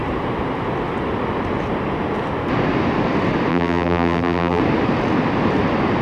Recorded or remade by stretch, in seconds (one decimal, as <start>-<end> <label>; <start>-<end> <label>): 0.0-3.5 recorded; 3.5-4.6 remade; 4.6-6.0 recorded